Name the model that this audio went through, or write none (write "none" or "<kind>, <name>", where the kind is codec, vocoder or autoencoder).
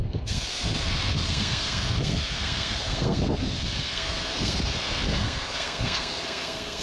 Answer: codec, SNAC